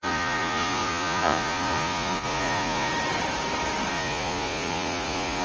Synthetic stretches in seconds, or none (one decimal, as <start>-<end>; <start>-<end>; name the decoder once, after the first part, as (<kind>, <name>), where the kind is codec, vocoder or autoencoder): 0.0-2.9 (vocoder, Vocos); 3.9-5.4